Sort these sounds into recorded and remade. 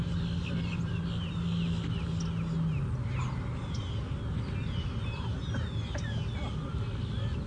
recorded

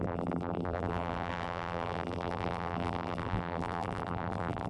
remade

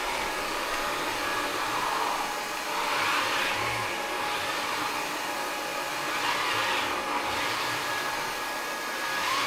recorded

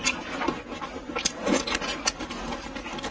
recorded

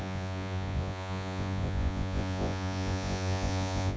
remade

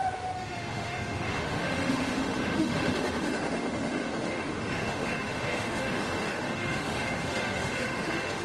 remade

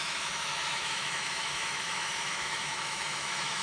remade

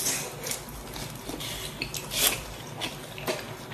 recorded